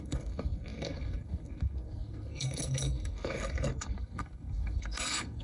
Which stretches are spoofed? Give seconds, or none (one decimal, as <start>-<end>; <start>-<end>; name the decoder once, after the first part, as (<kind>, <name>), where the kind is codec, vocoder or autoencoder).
0.0-5.4 (codec, SNAC)